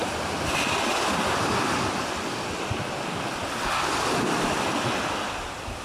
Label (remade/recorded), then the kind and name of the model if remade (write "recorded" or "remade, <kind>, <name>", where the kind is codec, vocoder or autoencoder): recorded